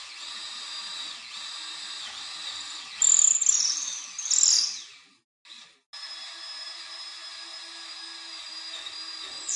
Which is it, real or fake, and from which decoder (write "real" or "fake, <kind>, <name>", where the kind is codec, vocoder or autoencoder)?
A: real